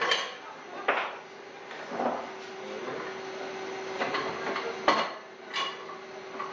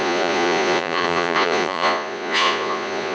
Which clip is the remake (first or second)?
second